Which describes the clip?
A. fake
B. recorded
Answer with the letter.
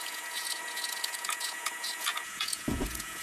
A